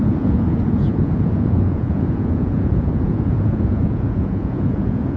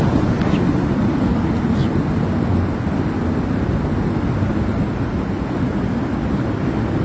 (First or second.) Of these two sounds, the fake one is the first